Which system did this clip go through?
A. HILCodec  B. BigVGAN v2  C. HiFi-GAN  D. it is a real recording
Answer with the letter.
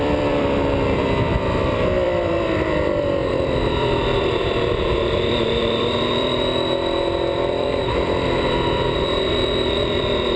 B